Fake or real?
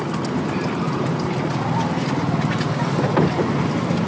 real